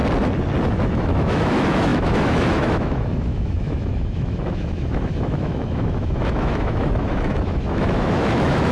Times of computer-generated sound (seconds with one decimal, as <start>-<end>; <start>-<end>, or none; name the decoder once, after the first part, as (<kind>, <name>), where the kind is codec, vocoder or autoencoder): 0.7-8.7 (autoencoder, DAC-VAE)